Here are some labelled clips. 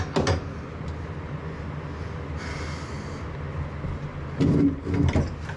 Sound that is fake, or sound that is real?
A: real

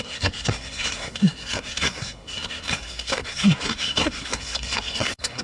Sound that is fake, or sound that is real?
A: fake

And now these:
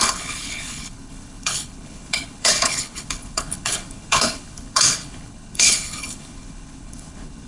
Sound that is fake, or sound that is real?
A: fake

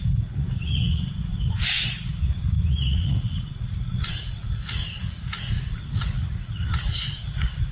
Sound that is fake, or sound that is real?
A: fake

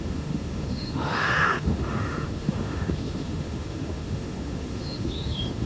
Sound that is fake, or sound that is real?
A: fake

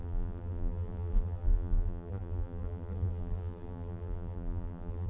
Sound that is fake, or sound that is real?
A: fake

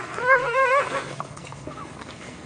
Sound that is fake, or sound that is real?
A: fake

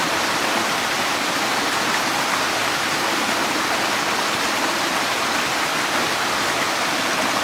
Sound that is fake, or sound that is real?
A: real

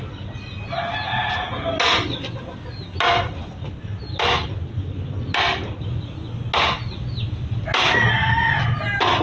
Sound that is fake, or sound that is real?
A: real